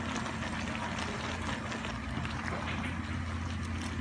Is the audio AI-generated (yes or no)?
no